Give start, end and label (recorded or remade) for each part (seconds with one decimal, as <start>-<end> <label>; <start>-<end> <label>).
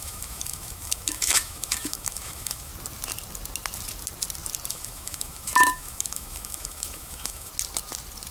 0.0-2.7 remade; 2.7-4.7 recorded; 4.7-7.5 remade; 7.5-8.3 recorded